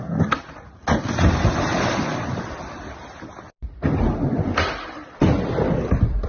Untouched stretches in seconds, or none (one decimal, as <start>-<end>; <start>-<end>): 0.0-6.3